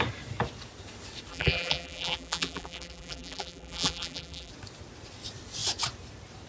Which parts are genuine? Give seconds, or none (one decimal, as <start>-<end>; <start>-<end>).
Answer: 0.0-1.3; 4.5-6.5